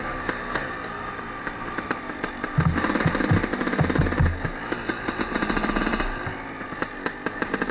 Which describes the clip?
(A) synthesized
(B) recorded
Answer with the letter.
B